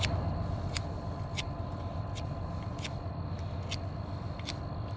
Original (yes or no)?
yes